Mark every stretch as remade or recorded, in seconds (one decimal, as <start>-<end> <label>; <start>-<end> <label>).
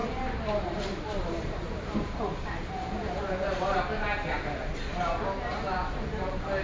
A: 0.0-3.8 remade; 3.8-5.5 recorded; 5.5-6.6 remade